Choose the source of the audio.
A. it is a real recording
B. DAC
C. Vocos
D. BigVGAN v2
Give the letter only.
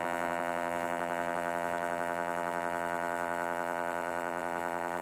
D